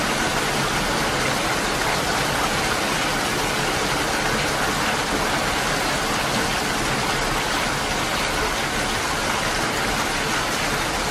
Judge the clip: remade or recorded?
recorded